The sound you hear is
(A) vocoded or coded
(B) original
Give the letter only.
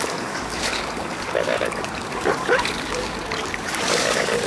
A